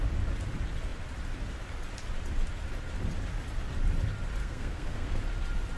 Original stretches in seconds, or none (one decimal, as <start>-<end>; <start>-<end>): 0.0-4.4; 5.2-5.8